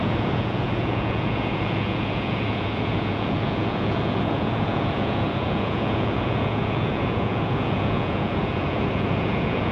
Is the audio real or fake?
fake